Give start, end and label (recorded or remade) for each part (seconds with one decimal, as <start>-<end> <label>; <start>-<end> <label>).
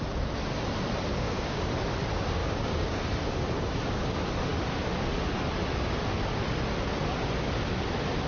0.0-1.1 recorded; 1.1-1.7 remade; 1.7-2.4 recorded; 2.4-3.0 remade; 3.0-8.3 recorded